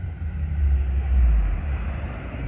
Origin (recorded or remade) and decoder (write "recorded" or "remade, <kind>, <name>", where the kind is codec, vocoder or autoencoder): recorded